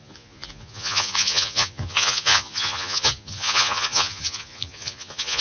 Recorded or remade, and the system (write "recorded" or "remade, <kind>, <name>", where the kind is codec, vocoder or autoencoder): remade, vocoder, Vocos